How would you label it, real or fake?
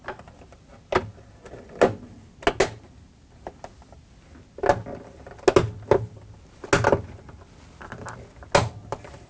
real